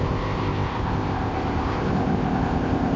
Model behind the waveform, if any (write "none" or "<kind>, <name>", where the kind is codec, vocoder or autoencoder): codec, ZipCodec